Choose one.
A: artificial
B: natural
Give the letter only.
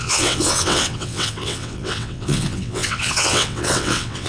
A